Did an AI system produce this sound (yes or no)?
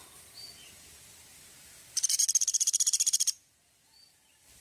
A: yes